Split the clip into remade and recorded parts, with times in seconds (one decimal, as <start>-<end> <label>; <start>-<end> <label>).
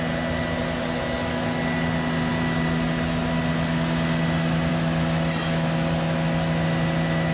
0.0-7.3 recorded